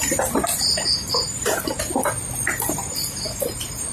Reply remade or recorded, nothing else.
recorded